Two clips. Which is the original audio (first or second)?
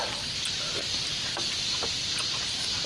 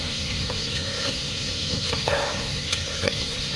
first